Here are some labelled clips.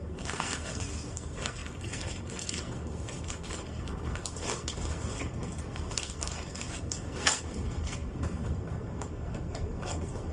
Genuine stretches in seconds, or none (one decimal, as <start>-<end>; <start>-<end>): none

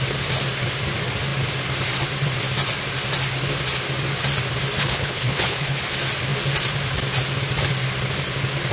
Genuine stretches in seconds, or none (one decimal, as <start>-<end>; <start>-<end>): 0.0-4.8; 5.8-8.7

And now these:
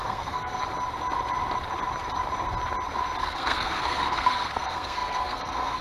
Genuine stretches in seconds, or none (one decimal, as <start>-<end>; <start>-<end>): 0.6-3.2

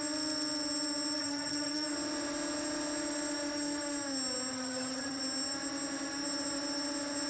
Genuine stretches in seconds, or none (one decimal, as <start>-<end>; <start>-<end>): 0.0-1.2; 1.7-4.5; 5.2-7.3